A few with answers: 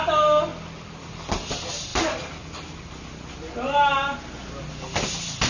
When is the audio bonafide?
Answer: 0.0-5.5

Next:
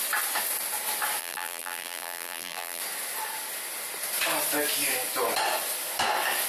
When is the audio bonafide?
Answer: 0.0-1.2; 2.8-6.5

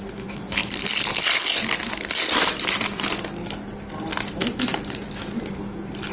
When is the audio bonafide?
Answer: 0.0-6.1

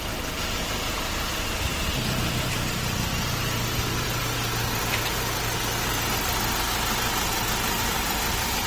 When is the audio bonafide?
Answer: 3.1-7.8